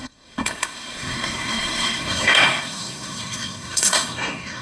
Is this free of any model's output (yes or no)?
no